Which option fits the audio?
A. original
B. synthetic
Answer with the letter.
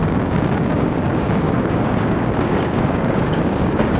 B